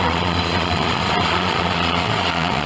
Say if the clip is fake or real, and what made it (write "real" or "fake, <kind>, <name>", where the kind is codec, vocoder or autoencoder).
fake, vocoder, Vocos